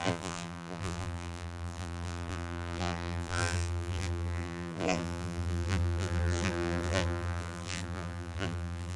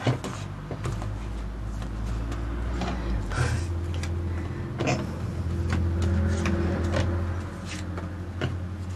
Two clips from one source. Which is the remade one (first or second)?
first